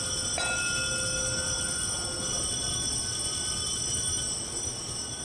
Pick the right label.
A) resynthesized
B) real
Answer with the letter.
B